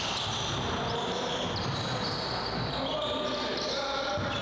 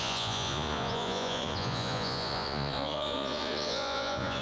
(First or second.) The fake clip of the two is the second